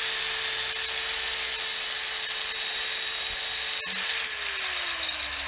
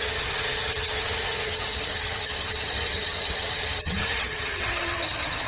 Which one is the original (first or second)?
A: first